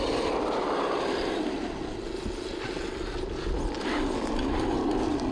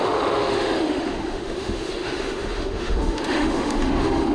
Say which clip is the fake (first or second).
second